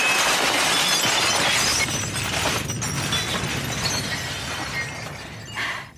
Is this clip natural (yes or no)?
yes